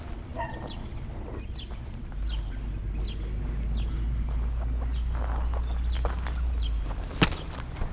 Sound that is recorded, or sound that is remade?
recorded